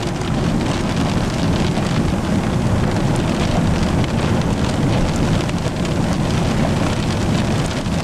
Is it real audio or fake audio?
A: real